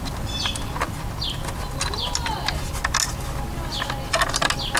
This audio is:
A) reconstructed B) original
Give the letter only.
B